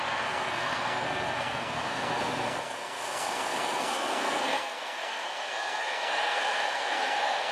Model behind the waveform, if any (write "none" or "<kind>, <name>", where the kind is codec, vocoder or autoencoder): codec, SNAC